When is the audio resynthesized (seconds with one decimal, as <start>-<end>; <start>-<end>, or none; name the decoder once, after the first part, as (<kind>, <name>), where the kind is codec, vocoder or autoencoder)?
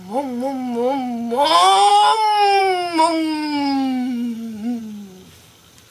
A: 1.9-2.6 (codec, DAC); 3.1-4.8